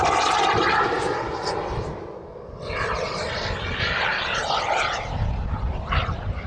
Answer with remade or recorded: recorded